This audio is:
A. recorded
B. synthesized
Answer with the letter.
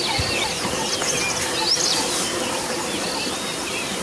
A